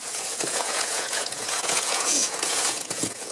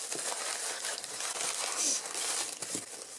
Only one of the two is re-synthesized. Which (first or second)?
first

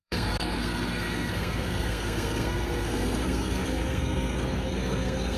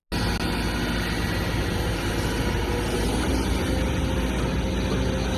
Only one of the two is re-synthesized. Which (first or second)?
first